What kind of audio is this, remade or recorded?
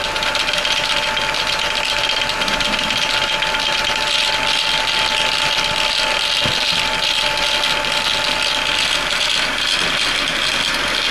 recorded